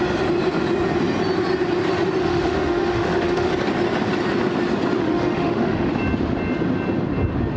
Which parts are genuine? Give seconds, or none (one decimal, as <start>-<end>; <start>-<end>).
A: 0.0-2.2; 3.5-5.0; 5.9-7.6